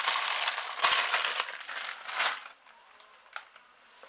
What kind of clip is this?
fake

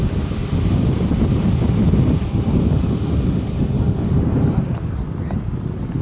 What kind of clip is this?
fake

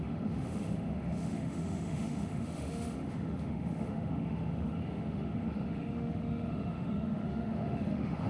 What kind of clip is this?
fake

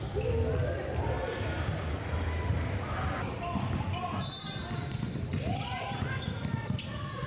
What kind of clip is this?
real